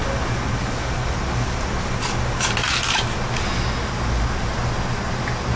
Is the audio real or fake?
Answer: real